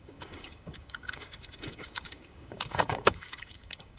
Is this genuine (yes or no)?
no